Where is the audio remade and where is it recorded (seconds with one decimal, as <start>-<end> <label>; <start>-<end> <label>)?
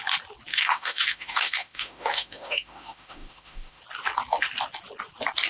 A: 0.0-0.5 recorded; 0.5-3.8 remade; 3.8-5.5 recorded